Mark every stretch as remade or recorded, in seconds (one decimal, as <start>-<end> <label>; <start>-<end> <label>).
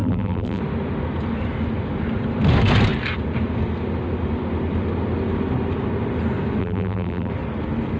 0.0-0.6 remade; 0.6-6.6 recorded; 6.6-7.3 remade; 7.3-8.0 recorded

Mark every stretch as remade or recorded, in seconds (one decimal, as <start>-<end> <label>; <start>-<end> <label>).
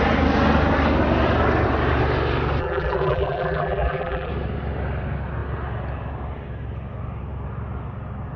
0.0-2.6 recorded; 2.6-4.3 remade; 4.3-8.4 recorded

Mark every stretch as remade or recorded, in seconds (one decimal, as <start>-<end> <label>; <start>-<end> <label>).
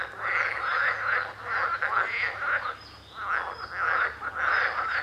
0.0-5.0 recorded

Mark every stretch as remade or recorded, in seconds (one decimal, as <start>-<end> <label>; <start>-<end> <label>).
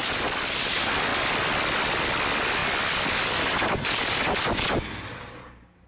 0.0-0.5 remade; 0.5-5.9 recorded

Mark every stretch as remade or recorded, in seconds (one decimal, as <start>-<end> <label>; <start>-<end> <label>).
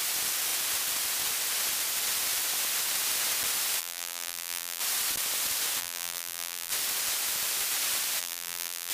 0.0-3.8 recorded; 3.8-4.8 remade; 4.8-5.8 recorded; 5.8-6.7 remade; 6.7-8.2 recorded; 8.2-8.9 remade